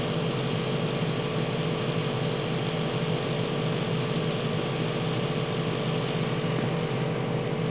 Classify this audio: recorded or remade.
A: recorded